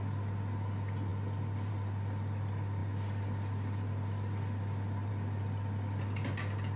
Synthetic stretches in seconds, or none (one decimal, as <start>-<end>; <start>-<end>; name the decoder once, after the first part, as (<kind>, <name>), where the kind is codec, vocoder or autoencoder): 1.1-1.7 (vocoder, BigVGAN v2)